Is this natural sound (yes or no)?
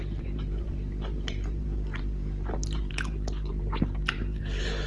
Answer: no